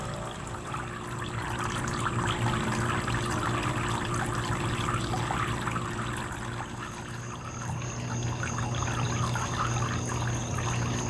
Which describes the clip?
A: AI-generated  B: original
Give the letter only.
B